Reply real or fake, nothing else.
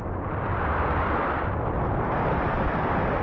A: real